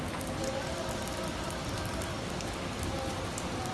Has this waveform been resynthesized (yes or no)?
no